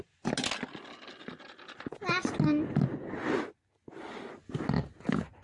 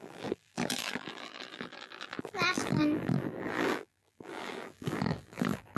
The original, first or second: first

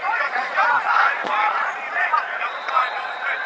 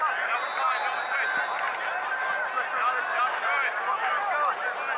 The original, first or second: second